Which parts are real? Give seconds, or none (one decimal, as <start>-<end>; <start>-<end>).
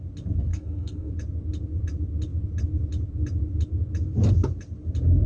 0.0-0.5; 1.1-5.3